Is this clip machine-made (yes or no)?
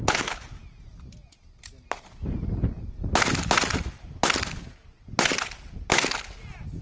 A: no